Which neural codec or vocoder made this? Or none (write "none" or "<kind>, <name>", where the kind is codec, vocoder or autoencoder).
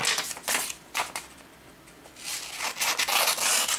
none